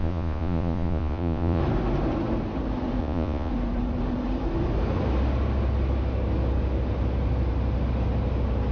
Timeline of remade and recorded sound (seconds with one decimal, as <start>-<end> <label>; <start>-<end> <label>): 0.0-1.6 remade; 1.6-3.0 recorded; 3.0-3.5 remade; 3.5-8.7 recorded